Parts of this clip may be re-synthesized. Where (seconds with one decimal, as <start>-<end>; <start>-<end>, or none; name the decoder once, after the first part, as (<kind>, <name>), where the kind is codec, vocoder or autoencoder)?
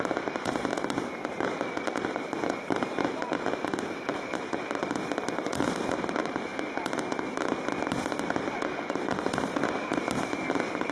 0.0-0.7 (vocoder, BigVGAN v2); 2.1-4.8; 5.4-6.5; 10.5-10.9